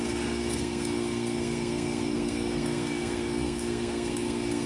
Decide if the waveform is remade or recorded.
remade